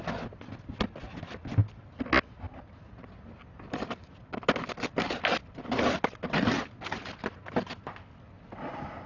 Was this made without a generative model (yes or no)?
yes